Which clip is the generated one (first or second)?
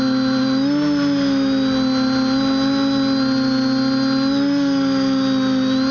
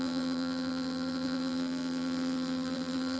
second